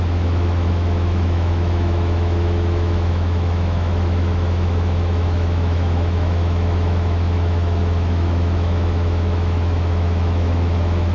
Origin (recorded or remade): remade